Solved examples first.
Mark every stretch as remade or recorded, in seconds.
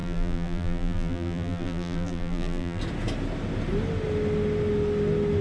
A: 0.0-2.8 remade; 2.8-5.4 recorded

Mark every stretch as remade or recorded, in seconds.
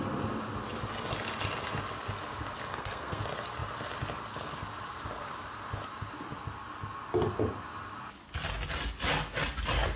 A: 0.0-2.7 recorded; 2.7-3.2 remade; 3.2-10.0 recorded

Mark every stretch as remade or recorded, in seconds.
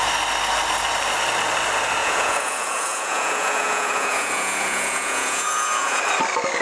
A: 0.0-2.0 recorded; 2.0-6.0 remade; 6.0-6.6 recorded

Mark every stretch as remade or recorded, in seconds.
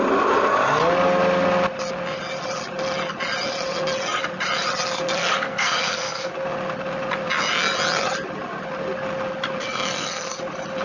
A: 0.0-5.2 recorded; 5.2-6.3 remade; 6.3-10.8 recorded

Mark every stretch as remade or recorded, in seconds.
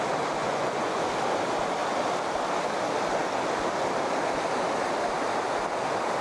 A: 0.0-0.4 recorded; 0.4-1.1 remade; 1.1-6.2 recorded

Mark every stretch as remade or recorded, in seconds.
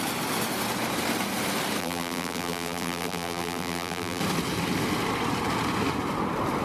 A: 0.0-1.8 recorded; 1.8-4.2 remade; 4.2-6.6 recorded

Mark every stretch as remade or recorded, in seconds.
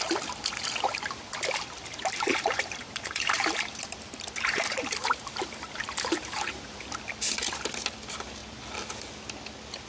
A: 0.0-2.3 recorded; 2.3-6.8 remade; 6.8-9.9 recorded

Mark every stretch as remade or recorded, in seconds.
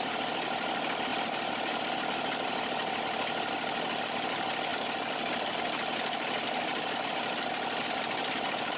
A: 0.0-1.1 recorded; 1.1-1.8 remade; 1.8-6.7 recorded; 6.7-7.3 remade; 7.3-8.8 recorded